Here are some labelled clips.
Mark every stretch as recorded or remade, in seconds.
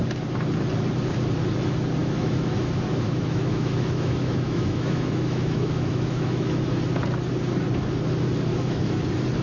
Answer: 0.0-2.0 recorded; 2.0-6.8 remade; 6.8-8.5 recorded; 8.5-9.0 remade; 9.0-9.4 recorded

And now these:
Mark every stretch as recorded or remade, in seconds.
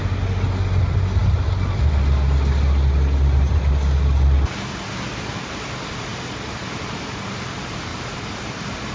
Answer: 0.0-7.9 recorded; 7.9-8.5 remade; 8.5-8.9 recorded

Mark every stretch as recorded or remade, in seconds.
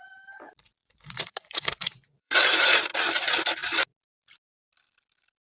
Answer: 0.0-0.8 recorded; 0.8-2.8 remade; 2.8-5.5 recorded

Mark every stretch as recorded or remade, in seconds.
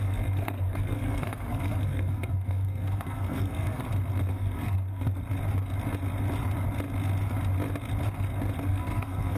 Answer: 0.0-3.8 remade; 3.8-4.3 recorded; 4.3-5.2 remade; 5.2-8.7 recorded; 8.7-9.4 remade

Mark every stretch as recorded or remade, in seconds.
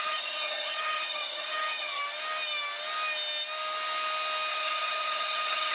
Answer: 0.0-2.0 remade; 2.0-4.5 recorded; 4.5-5.7 remade